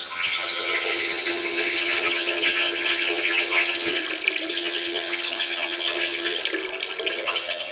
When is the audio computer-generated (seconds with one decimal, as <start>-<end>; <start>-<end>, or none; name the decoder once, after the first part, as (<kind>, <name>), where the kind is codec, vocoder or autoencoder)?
0.0-4.0 (vocoder, HiFi-GAN); 4.5-6.4; 7.1-7.7